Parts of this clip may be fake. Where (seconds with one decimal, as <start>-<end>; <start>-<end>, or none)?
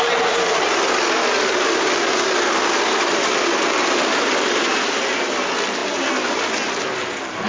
none